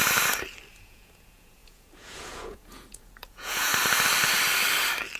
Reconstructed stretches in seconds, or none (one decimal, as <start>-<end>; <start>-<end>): 0.7-3.7